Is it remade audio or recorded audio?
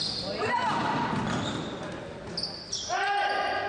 recorded